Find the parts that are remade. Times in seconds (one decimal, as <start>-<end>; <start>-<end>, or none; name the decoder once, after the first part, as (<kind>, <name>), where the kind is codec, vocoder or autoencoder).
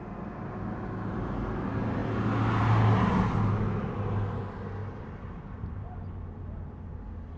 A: 4.8-7.0 (vocoder, BigVGAN v2)